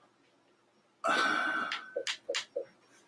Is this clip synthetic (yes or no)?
no